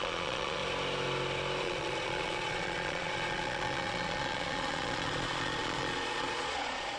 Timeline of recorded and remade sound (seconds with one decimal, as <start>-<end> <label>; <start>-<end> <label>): 0.0-0.6 remade; 0.6-1.6 recorded; 1.6-7.0 remade